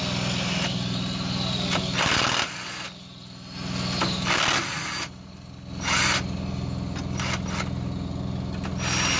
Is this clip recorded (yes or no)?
yes